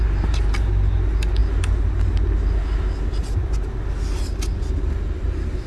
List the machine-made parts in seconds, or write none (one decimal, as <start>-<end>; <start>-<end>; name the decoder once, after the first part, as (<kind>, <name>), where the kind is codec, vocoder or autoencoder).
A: none